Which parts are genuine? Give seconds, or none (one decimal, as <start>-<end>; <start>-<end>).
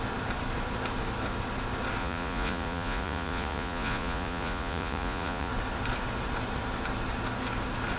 0.0-2.0; 5.5-8.0